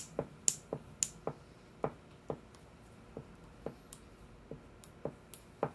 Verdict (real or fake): real